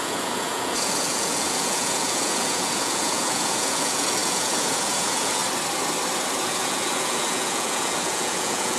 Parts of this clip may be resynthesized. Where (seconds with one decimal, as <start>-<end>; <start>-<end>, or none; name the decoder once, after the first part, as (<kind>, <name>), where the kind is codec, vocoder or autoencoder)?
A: 0.0-5.4 (vocoder, Vocos); 6.4-8.8